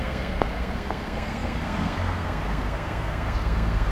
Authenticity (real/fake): fake